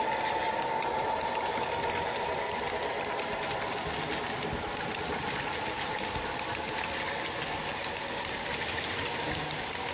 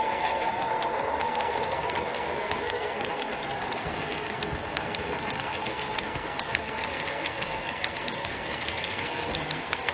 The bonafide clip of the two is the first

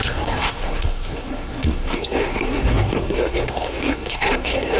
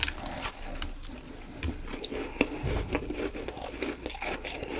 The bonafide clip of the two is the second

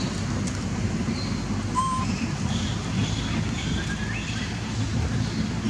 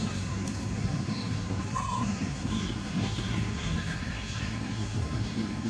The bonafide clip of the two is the first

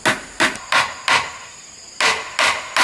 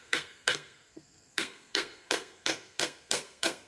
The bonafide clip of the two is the first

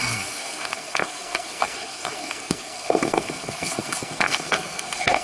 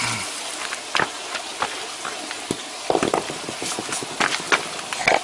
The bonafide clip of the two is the second